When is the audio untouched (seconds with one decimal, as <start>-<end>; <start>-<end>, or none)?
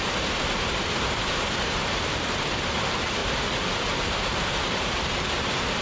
3.2-3.7